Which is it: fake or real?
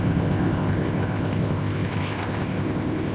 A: fake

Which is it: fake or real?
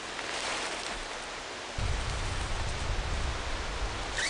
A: real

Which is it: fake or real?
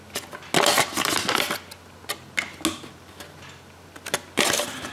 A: real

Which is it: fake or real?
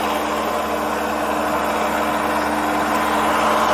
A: real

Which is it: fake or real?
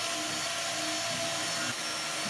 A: real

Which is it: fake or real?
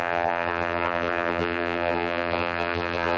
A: fake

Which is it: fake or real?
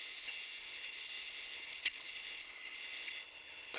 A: fake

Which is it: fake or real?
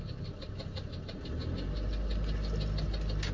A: real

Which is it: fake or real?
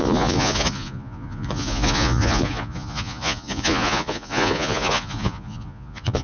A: fake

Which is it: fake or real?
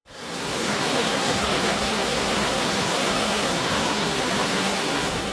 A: fake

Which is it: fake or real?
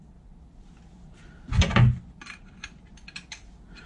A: real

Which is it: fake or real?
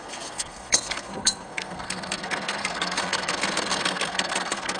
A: fake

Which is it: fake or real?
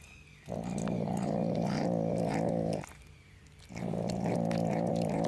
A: real